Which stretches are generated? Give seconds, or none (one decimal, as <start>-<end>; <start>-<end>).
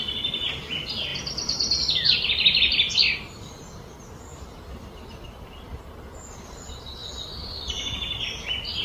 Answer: 4.3-5.9